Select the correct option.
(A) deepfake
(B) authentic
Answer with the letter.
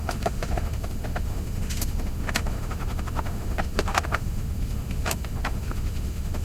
A